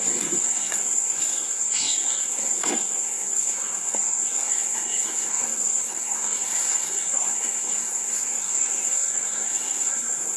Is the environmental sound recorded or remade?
remade